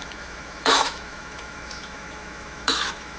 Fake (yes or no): yes